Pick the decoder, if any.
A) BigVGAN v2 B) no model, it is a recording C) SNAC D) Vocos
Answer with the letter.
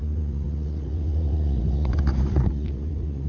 D